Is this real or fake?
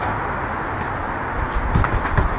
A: real